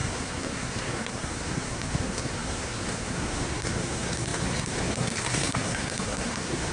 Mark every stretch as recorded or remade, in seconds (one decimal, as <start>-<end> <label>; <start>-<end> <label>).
0.0-6.7 remade